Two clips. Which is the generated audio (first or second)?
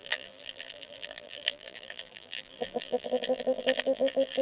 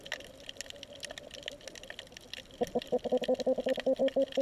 first